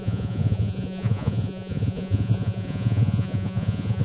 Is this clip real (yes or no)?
no